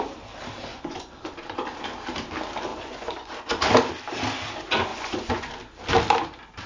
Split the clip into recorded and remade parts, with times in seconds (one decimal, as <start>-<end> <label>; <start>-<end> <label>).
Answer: 0.0-0.7 recorded; 0.7-1.3 remade; 1.3-2.7 recorded; 2.7-3.3 remade; 3.3-4.9 recorded; 4.9-5.5 remade; 5.5-6.7 recorded

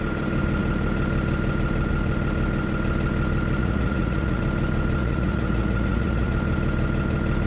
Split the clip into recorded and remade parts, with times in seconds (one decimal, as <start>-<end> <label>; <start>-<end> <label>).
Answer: 0.0-3.6 recorded; 3.6-4.4 remade; 4.4-5.0 recorded; 5.0-6.3 remade; 6.3-7.5 recorded

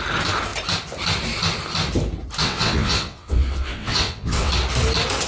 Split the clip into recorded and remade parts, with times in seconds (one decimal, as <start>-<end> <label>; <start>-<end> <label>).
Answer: 0.0-2.4 recorded; 2.4-4.5 remade; 4.5-5.3 recorded

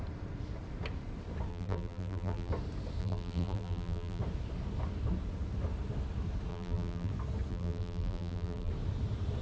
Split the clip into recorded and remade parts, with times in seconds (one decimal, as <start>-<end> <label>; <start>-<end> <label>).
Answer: 0.0-1.5 recorded; 1.5-2.5 remade; 2.5-3.0 recorded; 3.0-4.2 remade; 4.2-6.5 recorded; 6.5-7.1 remade; 7.1-7.5 recorded; 7.5-8.7 remade; 8.7-9.4 recorded

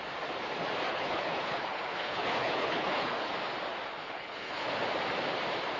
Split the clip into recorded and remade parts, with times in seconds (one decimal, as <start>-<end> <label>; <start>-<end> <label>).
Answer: 0.0-0.9 recorded; 0.9-3.3 remade; 3.3-4.0 recorded; 4.0-4.8 remade; 4.8-5.8 recorded

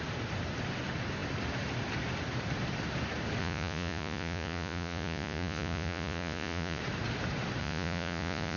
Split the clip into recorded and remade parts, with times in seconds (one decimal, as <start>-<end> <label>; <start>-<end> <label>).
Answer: 0.0-3.4 recorded; 3.4-6.8 remade; 6.8-7.6 recorded; 7.6-8.6 remade

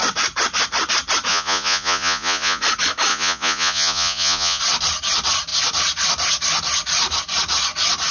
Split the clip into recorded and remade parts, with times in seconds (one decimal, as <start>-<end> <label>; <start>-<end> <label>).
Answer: 0.0-1.3 recorded; 1.3-2.6 remade; 2.6-3.1 recorded; 3.1-4.6 remade; 4.6-8.1 recorded

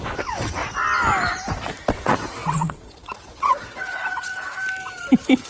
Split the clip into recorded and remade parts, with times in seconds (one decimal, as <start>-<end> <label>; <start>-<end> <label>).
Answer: 0.0-0.6 remade; 0.6-1.9 recorded; 1.9-4.3 remade; 4.3-5.5 recorded